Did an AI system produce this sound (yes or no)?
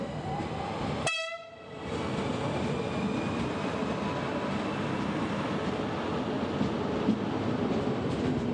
no